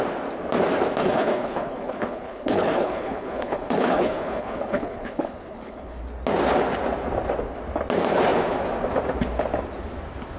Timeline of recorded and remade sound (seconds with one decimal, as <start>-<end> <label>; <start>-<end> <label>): 0.0-1.0 recorded; 1.0-6.0 remade; 6.0-10.4 recorded